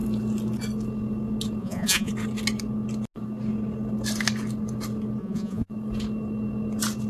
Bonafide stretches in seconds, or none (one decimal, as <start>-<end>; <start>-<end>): 0.0-1.6; 2.1-5.2; 5.7-7.1